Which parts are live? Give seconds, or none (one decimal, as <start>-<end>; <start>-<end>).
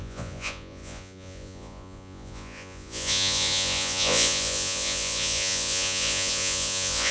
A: none